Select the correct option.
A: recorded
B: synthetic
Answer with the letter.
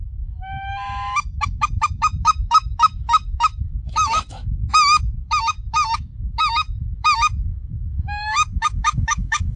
B